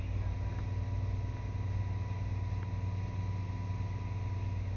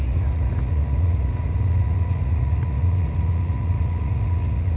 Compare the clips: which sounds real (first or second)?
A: first